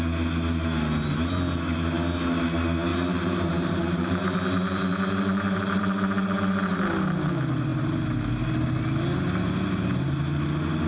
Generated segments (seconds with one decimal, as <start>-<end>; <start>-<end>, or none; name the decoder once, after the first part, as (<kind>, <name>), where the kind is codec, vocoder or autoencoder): 2.9-5.8 (vocoder, BigVGAN v2)